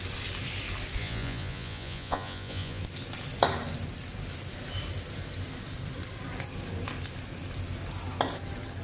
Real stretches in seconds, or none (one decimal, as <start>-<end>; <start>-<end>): 0.0-1.0; 2.8-8.8